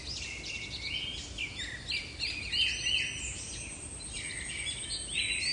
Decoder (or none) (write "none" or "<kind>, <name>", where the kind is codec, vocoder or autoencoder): none